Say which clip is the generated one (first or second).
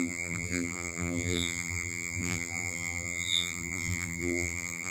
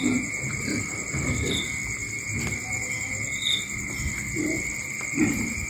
first